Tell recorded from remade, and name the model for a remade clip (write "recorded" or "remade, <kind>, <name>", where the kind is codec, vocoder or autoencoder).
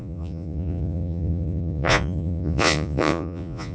remade, vocoder, Vocos